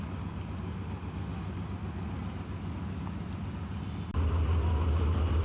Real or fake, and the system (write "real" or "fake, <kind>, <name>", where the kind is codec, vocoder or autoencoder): real